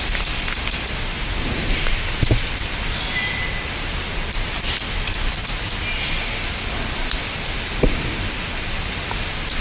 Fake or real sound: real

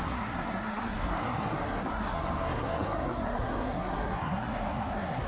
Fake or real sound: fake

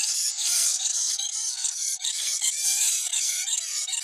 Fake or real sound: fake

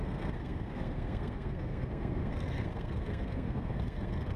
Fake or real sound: fake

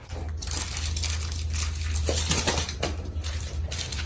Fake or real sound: real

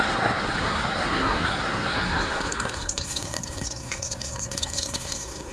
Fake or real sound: fake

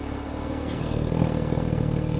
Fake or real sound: fake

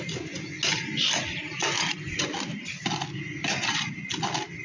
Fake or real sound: real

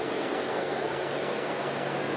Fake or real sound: fake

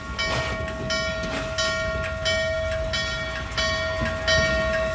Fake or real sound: real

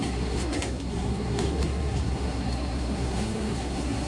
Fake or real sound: fake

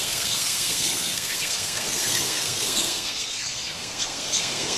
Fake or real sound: fake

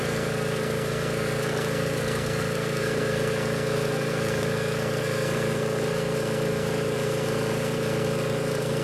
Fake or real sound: fake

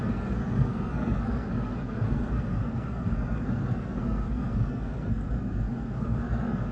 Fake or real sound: fake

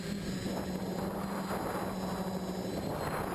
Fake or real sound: real